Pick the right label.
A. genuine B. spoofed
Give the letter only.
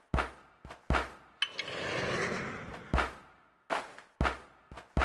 A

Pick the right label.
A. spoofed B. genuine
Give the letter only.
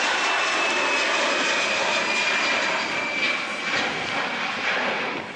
B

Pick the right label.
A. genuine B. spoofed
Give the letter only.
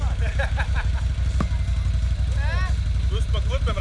A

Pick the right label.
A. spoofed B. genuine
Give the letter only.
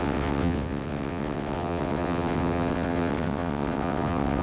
A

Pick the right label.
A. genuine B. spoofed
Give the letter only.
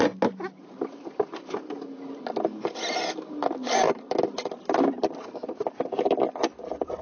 A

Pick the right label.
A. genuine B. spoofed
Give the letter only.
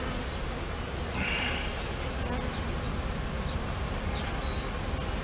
A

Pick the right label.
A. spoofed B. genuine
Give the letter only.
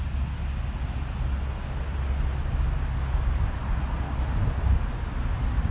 B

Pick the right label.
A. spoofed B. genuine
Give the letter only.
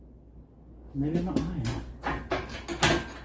B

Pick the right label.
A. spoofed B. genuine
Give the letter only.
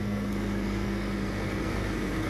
A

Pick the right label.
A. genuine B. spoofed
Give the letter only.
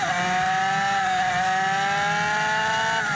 A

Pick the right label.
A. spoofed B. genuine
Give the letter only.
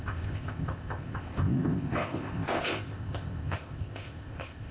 A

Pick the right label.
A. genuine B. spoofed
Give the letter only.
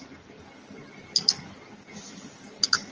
A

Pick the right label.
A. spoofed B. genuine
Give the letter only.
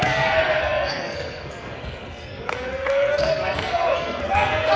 A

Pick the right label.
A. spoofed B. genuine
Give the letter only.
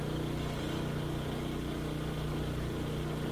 B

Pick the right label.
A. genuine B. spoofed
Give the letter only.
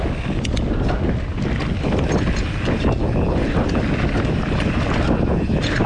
A